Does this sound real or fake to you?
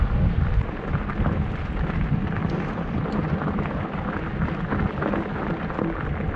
real